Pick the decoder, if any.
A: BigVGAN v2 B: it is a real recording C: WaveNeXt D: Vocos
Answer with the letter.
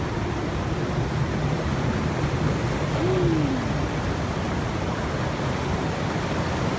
B